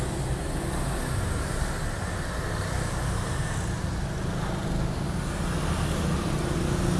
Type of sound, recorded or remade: recorded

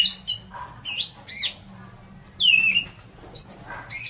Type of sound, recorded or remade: recorded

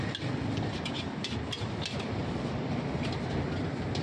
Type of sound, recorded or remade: recorded